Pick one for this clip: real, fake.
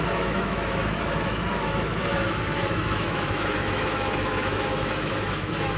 fake